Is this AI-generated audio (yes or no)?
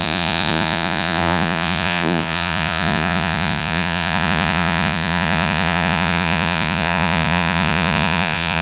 yes